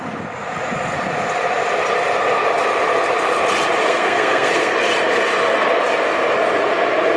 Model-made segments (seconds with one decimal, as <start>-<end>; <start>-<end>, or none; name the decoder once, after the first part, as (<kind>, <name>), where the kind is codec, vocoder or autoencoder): 3.8-4.7 (codec, SNAC)

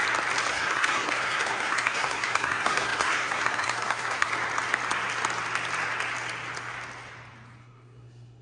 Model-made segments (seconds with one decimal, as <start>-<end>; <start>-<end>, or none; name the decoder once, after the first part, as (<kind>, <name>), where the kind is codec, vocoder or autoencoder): 0.5-4.3 (codec, SNAC); 7.6-8.4

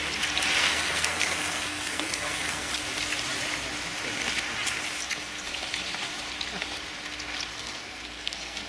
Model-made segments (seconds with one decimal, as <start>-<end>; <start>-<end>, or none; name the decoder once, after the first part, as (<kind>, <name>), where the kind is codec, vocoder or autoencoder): 0.6-2.7 (codec, SNAC); 7.5-8.7

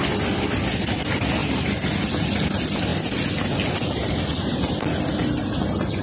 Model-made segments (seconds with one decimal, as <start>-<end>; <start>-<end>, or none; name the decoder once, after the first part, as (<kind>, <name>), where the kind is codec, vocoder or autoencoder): none

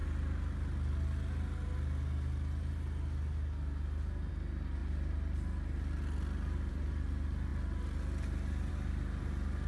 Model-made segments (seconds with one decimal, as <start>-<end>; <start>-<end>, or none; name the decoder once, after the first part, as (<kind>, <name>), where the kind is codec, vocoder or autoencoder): none

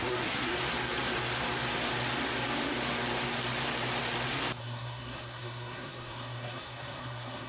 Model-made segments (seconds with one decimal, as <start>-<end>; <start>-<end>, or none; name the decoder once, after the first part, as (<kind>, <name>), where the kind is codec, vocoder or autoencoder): 0.0-0.5 (codec, SNAC); 4.6-7.5

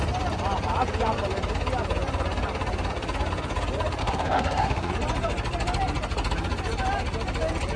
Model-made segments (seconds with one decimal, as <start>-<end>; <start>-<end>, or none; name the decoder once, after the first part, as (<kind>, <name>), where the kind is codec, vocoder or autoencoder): 4.0-4.9 (codec, SNAC)